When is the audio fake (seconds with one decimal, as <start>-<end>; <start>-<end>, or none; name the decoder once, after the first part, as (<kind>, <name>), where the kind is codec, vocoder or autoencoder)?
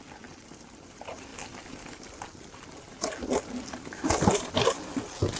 none